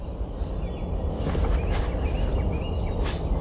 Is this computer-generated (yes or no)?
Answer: no